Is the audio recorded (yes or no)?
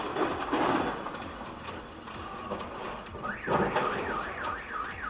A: yes